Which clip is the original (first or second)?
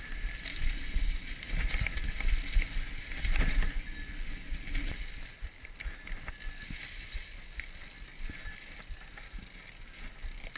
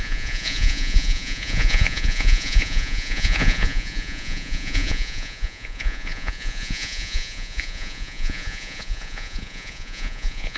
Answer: first